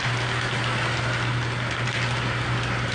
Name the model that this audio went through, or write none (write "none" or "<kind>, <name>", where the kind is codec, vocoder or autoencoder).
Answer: none